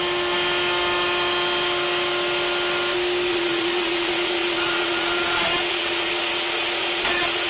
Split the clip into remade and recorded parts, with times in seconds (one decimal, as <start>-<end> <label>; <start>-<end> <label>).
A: 0.0-3.3 recorded; 3.3-7.5 remade